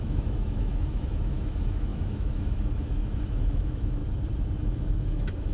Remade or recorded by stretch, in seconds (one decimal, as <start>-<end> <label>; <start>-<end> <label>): 0.0-4.0 remade; 4.0-4.6 recorded; 4.6-5.5 remade